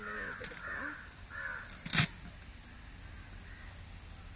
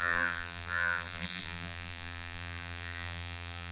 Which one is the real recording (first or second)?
first